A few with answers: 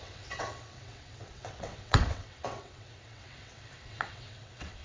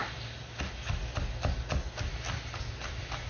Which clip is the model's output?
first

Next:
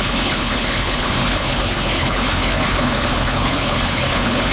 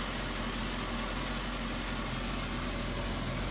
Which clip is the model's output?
first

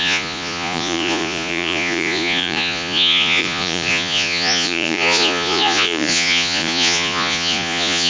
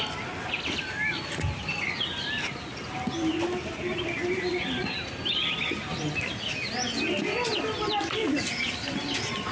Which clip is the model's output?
first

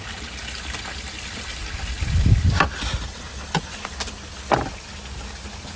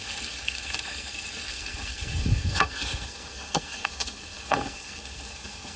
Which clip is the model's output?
second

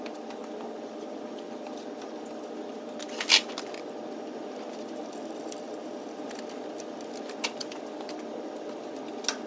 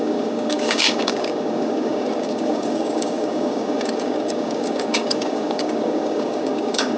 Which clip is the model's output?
second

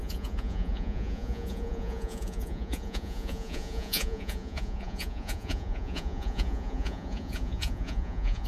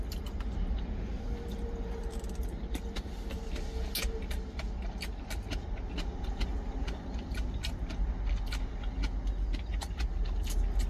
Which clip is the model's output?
first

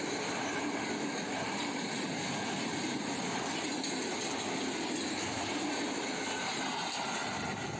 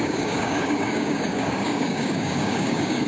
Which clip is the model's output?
second